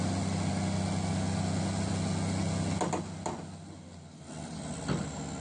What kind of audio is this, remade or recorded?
recorded